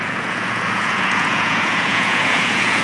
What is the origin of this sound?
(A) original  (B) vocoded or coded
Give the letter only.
B